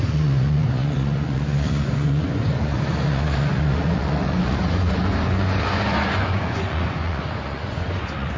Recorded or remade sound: remade